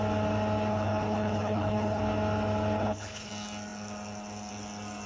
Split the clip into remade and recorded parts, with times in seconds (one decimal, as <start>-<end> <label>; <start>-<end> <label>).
0.0-0.7 recorded; 0.7-2.0 remade; 2.0-2.8 recorded; 2.8-3.3 remade; 3.3-5.1 recorded